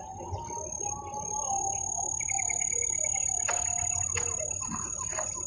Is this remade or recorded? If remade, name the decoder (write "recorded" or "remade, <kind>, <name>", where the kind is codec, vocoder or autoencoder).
recorded